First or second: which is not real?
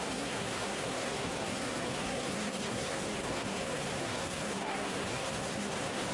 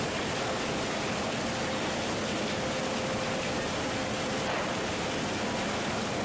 first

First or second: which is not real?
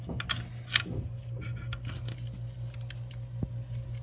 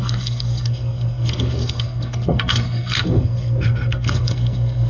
second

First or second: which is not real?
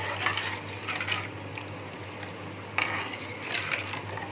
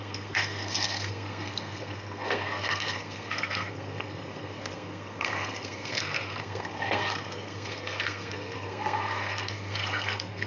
second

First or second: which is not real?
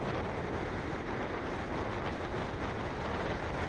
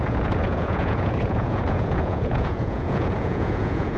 second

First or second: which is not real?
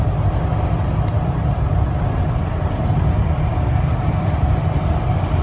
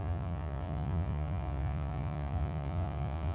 second